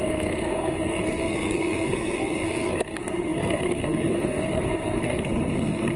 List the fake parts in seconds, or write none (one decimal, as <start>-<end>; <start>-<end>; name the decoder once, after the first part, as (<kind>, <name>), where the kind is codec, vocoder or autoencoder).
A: 0.0-6.0 (codec, SNAC)